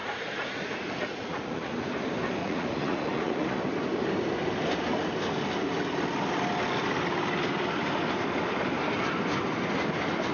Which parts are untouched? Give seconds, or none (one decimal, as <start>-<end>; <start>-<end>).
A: 1.7-2.4; 3.6-10.3